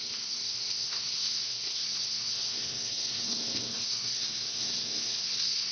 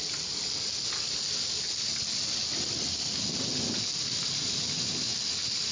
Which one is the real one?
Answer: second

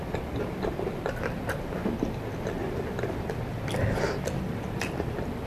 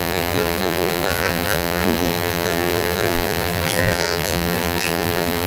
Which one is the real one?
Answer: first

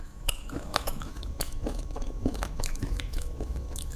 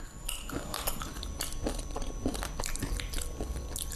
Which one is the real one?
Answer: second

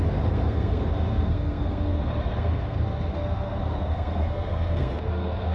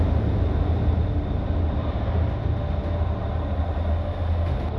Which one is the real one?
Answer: second